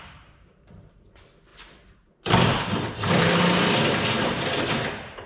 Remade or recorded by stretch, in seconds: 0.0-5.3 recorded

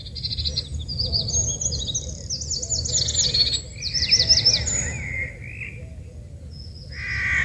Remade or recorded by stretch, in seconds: 0.0-7.4 recorded

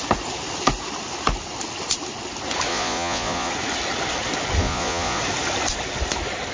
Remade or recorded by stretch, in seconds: 0.0-2.7 recorded; 2.7-3.5 remade; 3.5-4.6 recorded; 4.6-5.2 remade; 5.2-6.5 recorded

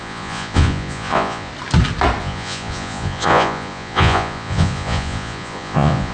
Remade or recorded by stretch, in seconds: 0.0-1.5 remade; 1.5-2.2 recorded; 2.2-6.1 remade

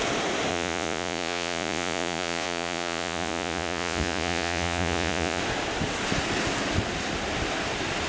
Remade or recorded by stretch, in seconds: 0.0-0.5 recorded; 0.5-5.4 remade; 5.4-8.1 recorded

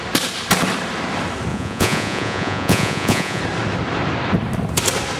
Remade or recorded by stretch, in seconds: 0.0-1.5 recorded; 1.5-3.4 remade; 3.4-5.2 recorded

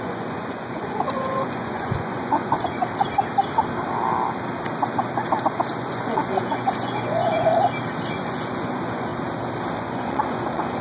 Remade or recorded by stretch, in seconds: 0.0-2.8 remade; 2.8-5.7 recorded; 5.7-7.5 remade; 7.5-8.1 recorded; 8.1-9.1 remade; 9.1-9.8 recorded; 9.8-10.8 remade

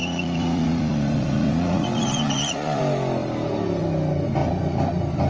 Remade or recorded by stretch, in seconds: 0.0-2.8 remade; 2.8-5.3 recorded